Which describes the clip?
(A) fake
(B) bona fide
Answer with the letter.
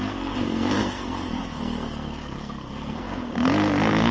A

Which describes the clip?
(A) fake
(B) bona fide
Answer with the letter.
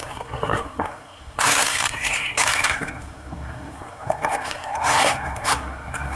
A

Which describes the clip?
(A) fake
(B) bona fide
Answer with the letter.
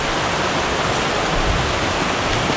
B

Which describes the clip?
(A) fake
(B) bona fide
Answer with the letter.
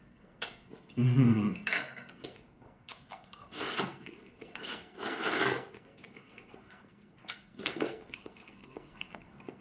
A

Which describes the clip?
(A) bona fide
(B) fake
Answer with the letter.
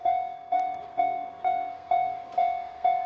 B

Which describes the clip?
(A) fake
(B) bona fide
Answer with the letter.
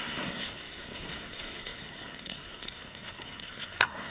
A